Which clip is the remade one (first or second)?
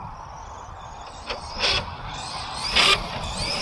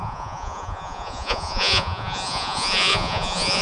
second